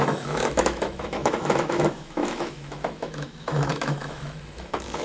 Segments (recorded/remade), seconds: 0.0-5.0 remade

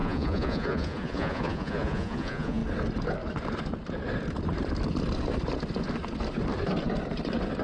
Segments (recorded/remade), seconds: 0.0-2.6 remade; 2.6-7.6 recorded

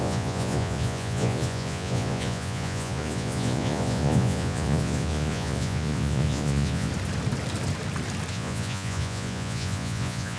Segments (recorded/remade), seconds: 0.0-6.9 remade; 6.9-8.3 recorded; 8.3-10.4 remade